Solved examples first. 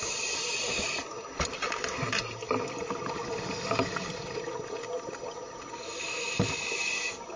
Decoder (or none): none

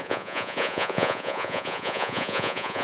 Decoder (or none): vocoder, Vocos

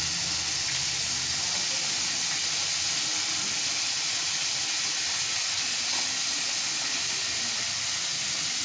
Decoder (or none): none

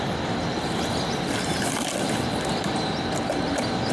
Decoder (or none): none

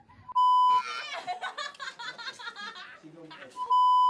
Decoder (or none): none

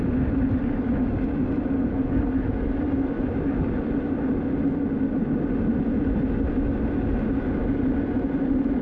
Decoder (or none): none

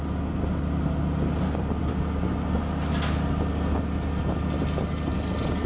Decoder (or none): none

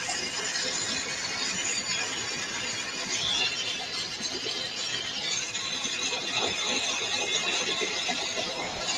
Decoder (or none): none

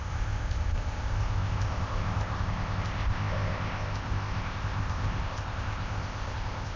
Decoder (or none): codec, ZipCodec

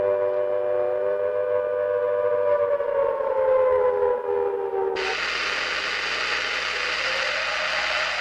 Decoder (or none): none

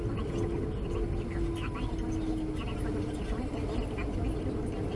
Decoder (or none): none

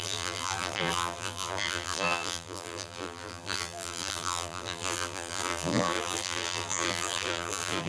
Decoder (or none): vocoder, BigVGAN v2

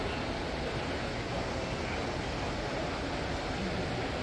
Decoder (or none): none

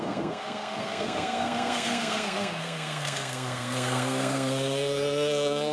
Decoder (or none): codec, SNAC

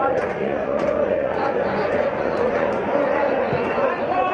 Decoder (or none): vocoder, Vocos